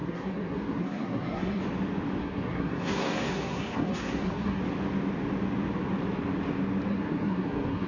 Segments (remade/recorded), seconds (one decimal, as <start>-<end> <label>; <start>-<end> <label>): 0.0-1.6 remade; 1.6-2.2 recorded; 2.2-4.6 remade; 4.6-6.9 recorded; 6.9-7.9 remade